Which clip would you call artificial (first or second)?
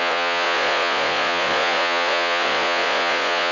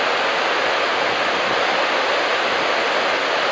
first